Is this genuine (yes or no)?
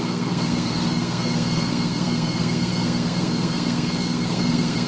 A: no